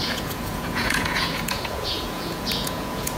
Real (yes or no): no